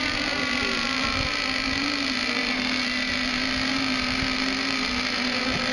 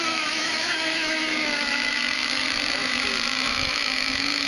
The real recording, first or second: first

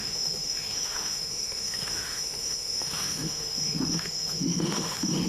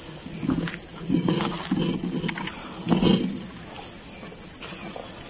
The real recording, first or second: second